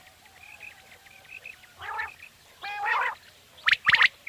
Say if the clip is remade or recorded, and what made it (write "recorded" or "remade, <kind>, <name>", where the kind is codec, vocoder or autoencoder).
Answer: recorded